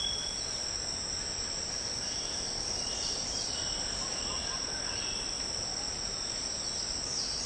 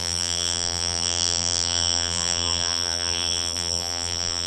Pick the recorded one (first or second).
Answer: first